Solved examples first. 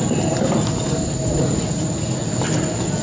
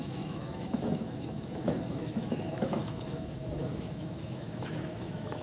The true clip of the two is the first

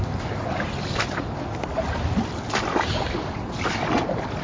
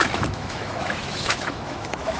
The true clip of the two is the first